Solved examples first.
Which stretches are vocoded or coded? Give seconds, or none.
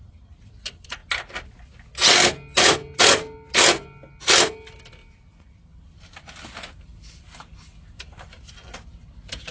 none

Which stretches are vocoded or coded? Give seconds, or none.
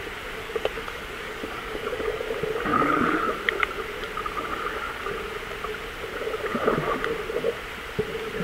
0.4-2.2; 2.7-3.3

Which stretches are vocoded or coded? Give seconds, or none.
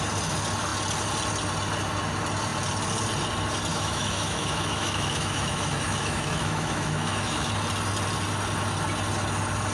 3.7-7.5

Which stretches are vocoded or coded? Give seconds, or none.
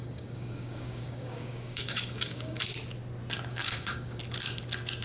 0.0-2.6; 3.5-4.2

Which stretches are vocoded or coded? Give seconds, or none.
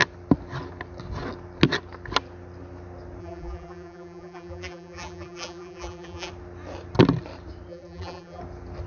3.2-6.3; 7.7-8.4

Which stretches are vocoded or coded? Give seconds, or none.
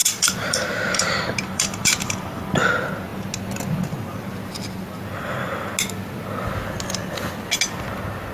0.0-2.4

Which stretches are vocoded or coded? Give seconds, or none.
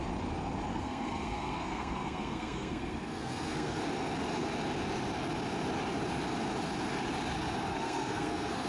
0.7-3.8; 7.7-8.7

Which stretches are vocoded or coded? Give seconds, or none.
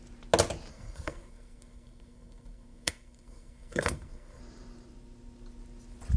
0.7-4.4